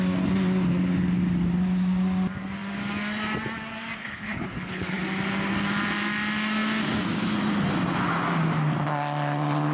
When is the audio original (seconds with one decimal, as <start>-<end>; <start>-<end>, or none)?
0.0-4.0; 5.0-9.7